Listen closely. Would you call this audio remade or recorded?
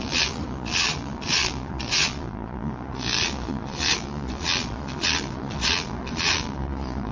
remade